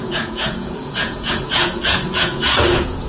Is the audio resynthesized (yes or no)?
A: yes